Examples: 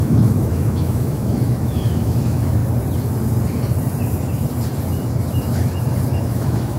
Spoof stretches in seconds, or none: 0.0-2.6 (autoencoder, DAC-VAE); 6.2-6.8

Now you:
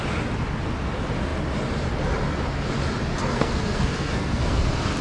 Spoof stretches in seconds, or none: 3.2-4.6 (codec, SNAC)

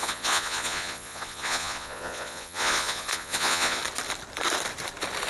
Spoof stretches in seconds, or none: 0.0-3.8 (vocoder, Vocos)

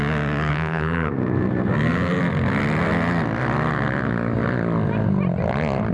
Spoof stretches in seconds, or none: 0.5-2.2 (codec, SNAC)

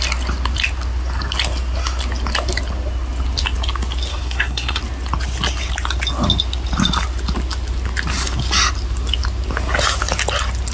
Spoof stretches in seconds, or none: 4.1-4.8 (codec, SNAC)

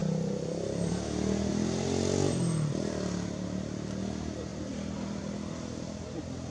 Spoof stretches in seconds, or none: 0.0-0.9 (vocoder, BigVGAN v2); 4.5-5.2